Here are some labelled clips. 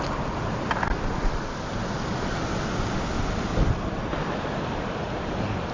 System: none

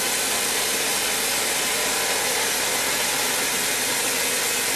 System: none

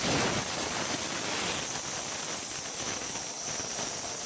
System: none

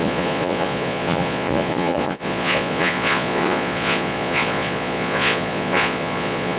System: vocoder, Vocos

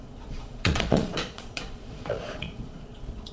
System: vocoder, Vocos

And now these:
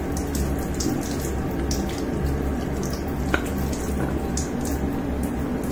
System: none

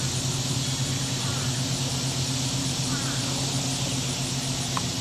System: none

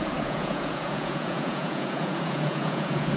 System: vocoder, Vocos